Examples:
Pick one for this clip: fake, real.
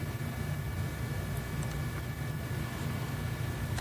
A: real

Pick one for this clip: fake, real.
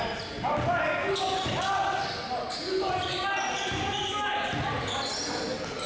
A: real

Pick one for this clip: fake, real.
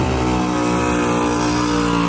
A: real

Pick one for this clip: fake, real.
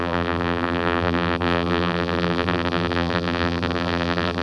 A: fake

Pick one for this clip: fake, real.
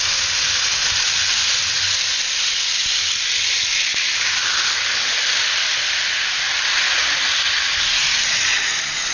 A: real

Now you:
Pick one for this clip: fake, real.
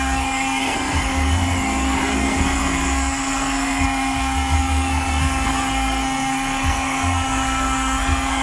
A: fake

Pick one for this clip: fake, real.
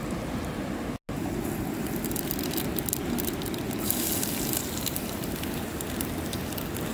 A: real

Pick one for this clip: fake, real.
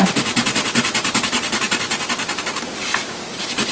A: real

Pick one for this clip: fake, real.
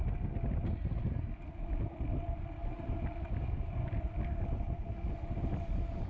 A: real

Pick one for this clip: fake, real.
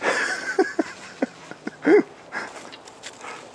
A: real